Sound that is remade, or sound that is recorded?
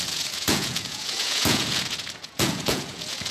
remade